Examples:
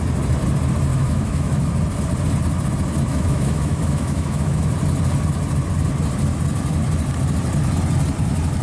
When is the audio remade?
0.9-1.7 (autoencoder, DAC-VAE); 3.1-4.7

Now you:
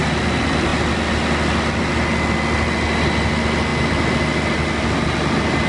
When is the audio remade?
none

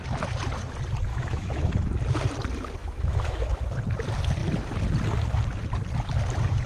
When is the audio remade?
1.1-1.7 (autoencoder, DAC-VAE); 2.8-3.6

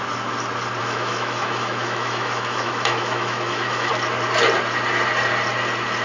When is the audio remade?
0.8-3.9 (autoencoder, DAC-VAE)

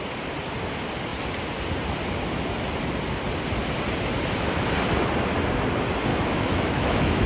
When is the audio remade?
6.1-7.3 (autoencoder, DAC-VAE)

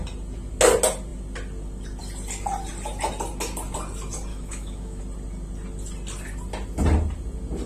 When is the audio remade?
4.3-5.0 (autoencoder, DAC-VAE)

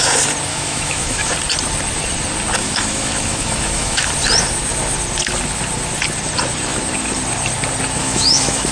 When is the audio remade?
0.5-1.3 (autoencoder, DAC-VAE); 2.6-4.1; 8.0-8.7